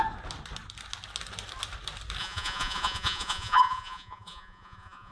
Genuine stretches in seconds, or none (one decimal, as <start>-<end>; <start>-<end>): 0.0-2.2